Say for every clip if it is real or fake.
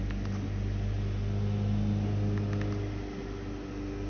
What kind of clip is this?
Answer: real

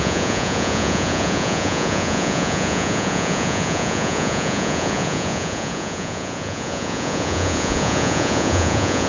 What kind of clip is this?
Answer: fake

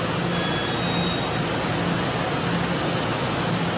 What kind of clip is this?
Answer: real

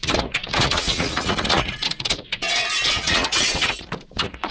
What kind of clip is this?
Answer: fake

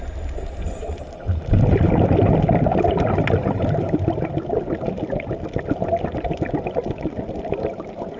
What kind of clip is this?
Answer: real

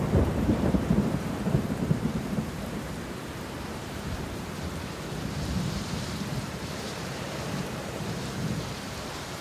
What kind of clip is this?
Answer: fake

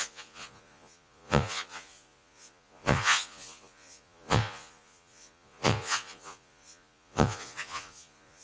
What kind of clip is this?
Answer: fake